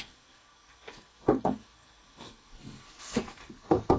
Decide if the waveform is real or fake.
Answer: fake